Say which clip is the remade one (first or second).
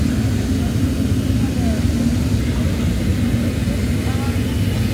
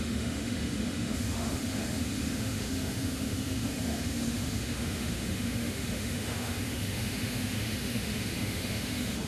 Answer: second